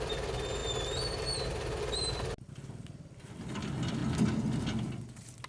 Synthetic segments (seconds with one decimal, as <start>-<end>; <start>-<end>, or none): none